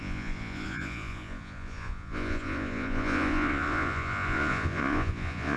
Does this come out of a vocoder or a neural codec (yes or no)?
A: yes